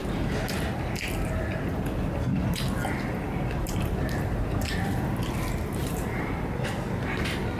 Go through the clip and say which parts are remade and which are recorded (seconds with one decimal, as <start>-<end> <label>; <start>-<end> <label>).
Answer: 0.0-3.6 recorded; 3.6-4.9 remade; 4.9-5.8 recorded; 5.8-6.5 remade; 6.5-7.6 recorded